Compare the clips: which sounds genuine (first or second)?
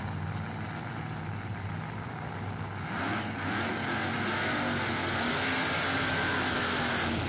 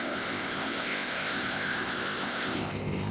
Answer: first